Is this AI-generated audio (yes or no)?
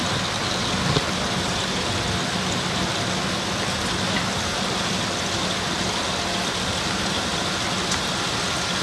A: no